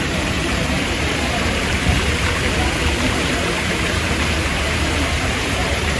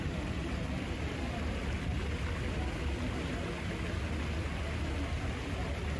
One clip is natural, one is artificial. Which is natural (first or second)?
second